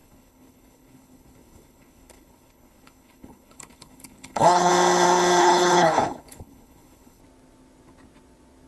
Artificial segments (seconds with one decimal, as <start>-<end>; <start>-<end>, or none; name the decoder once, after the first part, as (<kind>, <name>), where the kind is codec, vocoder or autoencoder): 0.0-4.7 (codec, HILCodec); 5.4-7.2